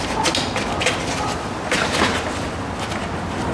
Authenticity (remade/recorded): recorded